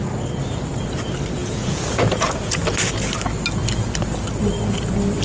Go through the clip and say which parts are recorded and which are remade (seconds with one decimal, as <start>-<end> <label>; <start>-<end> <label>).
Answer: 0.0-1.4 recorded; 1.4-2.6 remade; 2.6-5.2 recorded